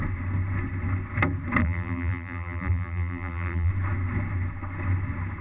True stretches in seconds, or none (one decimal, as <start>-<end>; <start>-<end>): 0.0-1.6; 3.7-5.4